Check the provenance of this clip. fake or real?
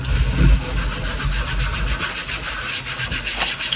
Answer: real